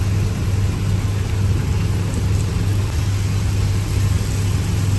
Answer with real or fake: real